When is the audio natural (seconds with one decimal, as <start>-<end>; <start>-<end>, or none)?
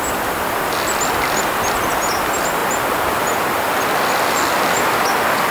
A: 0.0-5.5